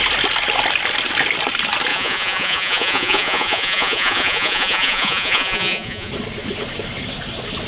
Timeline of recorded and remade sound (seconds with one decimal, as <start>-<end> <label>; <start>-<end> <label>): 0.0-1.9 recorded; 1.9-6.1 remade; 6.1-7.7 recorded

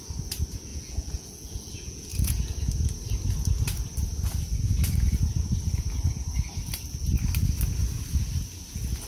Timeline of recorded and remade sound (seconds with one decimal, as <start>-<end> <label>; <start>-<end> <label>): 0.0-0.7 recorded; 0.7-2.3 remade; 2.3-9.1 recorded

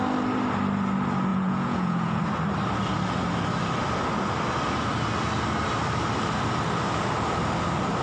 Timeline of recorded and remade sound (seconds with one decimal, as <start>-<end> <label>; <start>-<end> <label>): 0.0-1.3 recorded; 1.3-2.2 remade; 2.2-8.0 recorded

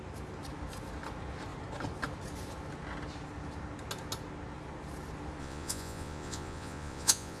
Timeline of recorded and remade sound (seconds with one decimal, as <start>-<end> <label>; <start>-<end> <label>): 0.0-5.4 recorded; 5.4-7.4 remade